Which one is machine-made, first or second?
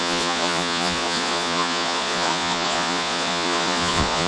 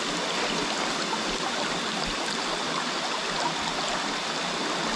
first